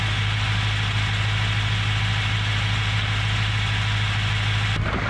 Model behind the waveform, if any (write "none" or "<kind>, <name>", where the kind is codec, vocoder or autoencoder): none